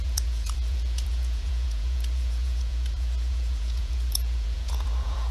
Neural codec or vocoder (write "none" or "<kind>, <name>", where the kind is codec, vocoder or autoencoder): vocoder, Vocos